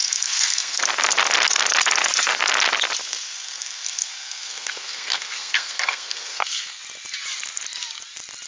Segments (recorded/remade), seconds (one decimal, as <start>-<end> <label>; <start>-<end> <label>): 0.0-0.8 remade; 0.8-3.0 recorded; 3.0-6.8 remade; 6.8-8.5 recorded